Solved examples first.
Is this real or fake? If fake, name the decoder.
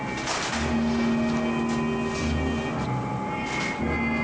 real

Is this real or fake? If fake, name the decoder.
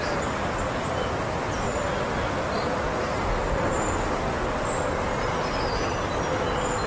real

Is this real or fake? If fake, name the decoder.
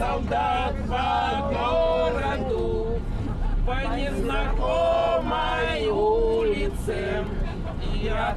real